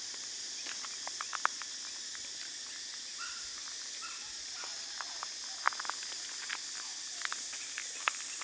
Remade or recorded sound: recorded